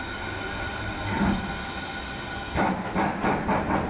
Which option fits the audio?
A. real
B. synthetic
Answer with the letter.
A